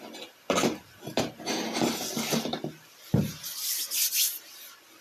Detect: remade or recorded recorded